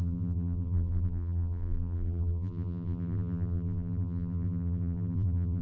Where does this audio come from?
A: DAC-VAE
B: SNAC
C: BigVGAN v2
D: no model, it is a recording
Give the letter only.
C